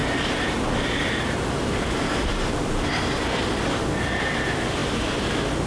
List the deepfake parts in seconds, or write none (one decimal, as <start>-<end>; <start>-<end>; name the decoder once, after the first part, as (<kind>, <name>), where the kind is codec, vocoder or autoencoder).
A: 0.0-3.4 (vocoder, BigVGAN v2)